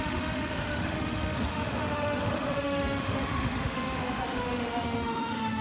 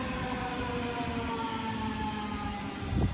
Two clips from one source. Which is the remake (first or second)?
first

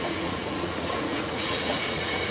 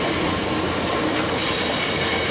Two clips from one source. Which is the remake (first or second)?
first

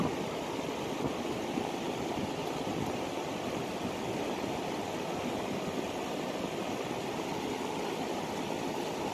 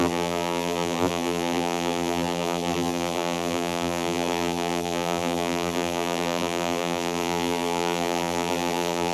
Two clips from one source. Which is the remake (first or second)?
second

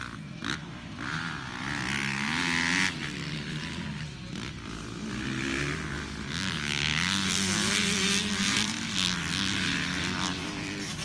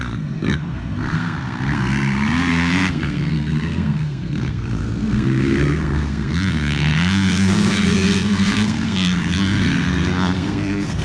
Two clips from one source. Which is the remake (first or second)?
second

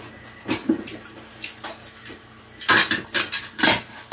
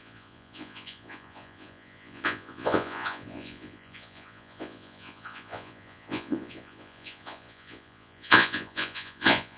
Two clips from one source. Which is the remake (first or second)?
second